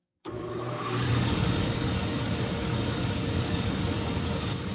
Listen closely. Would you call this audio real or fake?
fake